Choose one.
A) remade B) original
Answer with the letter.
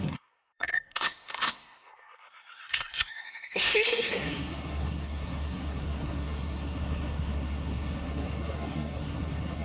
A